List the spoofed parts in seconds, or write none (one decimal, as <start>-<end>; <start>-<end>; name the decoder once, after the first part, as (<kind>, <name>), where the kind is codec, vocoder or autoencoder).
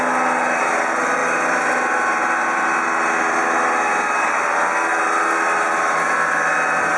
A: none